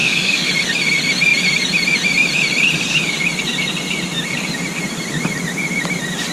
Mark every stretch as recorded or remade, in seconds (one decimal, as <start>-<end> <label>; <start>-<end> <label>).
0.0-0.5 remade; 0.5-6.3 recorded